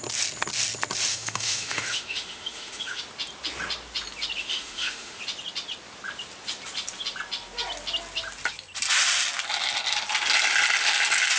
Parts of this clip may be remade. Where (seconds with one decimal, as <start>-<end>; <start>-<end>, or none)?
1.1-3.0; 4.4-5.2